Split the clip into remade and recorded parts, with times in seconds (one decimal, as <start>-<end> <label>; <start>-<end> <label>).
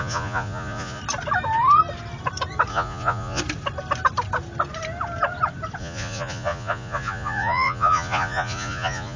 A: 0.0-1.0 remade; 1.0-2.7 recorded; 2.7-3.4 remade; 3.4-5.8 recorded; 5.8-9.2 remade